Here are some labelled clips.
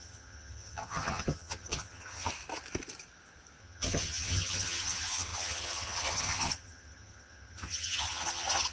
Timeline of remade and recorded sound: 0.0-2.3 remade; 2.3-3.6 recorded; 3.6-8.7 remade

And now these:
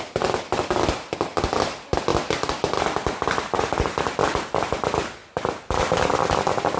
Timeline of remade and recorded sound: 0.0-5.2 recorded; 5.2-5.8 remade; 5.8-6.8 recorded

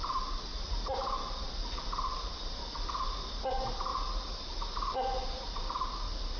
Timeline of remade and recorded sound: 0.0-2.6 remade; 2.6-3.5 recorded; 3.5-3.9 remade; 3.9-4.5 recorded; 4.5-6.4 remade

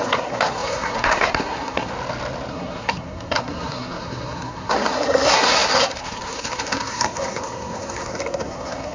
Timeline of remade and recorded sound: 0.0-1.9 remade; 1.9-2.5 recorded; 2.5-8.9 remade

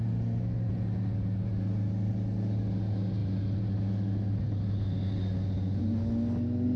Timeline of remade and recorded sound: 0.0-6.8 recorded

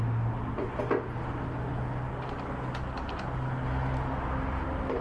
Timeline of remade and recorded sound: 0.0-5.0 recorded